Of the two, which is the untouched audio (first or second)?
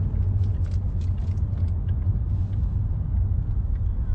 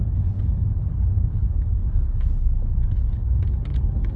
first